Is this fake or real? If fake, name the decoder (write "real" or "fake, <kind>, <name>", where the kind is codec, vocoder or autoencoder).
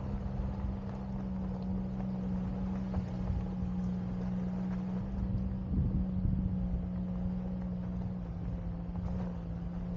real